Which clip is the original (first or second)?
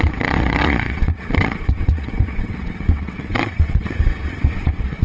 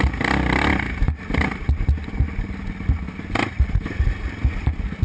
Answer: second